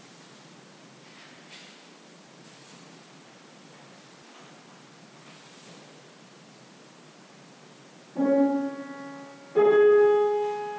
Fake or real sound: real